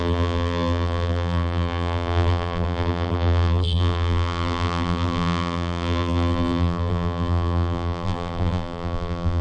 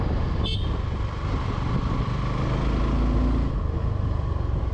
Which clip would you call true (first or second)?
second